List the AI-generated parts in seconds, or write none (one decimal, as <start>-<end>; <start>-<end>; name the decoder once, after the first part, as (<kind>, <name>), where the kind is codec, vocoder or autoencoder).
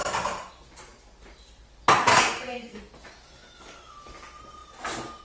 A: 2.1-2.8 (codec, SNAC)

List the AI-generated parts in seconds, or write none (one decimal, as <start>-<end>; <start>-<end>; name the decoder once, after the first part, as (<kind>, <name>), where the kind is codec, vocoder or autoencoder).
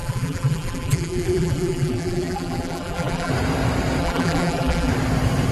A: 0.0-3.3 (vocoder, BigVGAN v2); 4.0-4.9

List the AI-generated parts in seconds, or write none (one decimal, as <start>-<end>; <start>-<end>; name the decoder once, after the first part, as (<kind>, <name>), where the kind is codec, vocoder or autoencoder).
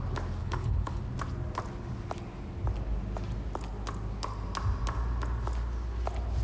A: 0.4-1.0 (codec, HILCodec)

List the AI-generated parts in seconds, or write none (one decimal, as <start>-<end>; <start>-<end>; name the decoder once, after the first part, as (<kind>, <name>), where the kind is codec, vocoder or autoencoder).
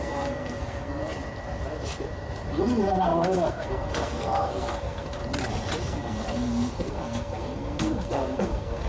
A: 0.0-1.0 (codec, SNAC); 2.6-5.2; 5.8-8.9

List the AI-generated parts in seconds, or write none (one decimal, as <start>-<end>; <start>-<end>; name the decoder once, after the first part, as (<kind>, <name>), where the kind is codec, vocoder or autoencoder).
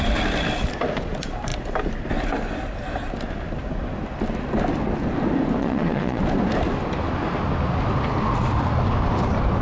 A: 5.6-6.2 (vocoder, Vocos)